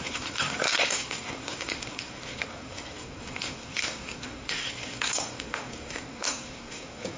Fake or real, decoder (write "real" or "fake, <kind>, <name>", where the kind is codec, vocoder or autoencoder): fake, codec, SNAC